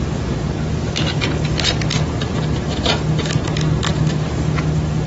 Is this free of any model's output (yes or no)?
yes